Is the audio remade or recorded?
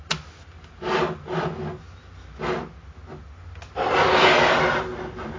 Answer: recorded